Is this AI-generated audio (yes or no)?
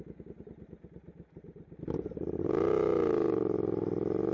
no